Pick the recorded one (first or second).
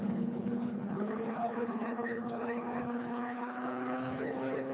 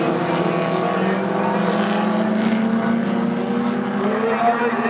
second